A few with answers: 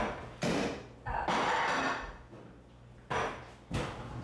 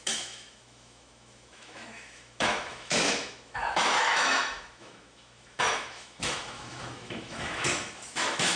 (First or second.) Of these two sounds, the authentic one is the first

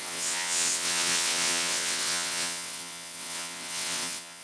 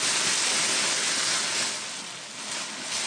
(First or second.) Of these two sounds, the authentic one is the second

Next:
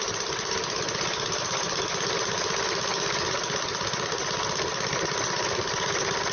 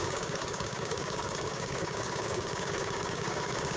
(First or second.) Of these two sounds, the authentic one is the first